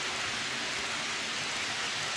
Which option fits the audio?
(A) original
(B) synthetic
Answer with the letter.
A